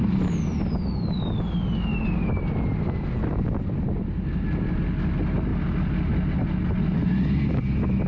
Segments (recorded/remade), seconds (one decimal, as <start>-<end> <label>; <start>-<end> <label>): 0.0-8.1 recorded